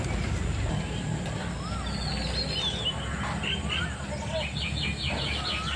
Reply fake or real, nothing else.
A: real